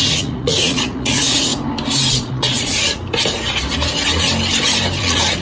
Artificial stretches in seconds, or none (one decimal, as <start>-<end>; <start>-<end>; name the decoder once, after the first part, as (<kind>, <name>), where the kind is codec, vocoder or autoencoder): 0.0-1.5 (vocoder, Vocos); 2.1-3.0; 5.0-5.4